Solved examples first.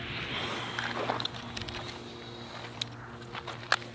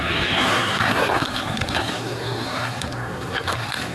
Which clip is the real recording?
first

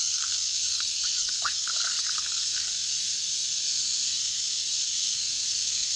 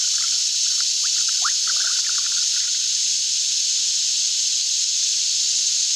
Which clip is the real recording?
second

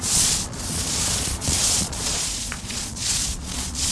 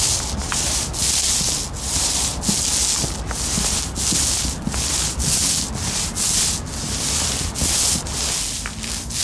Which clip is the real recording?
second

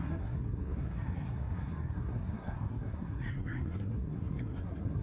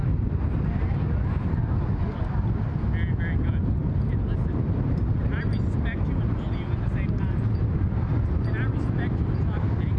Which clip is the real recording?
second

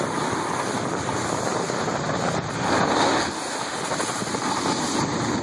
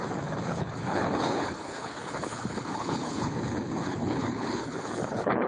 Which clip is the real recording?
first